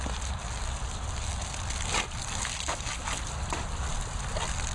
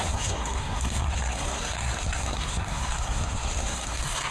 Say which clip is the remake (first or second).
second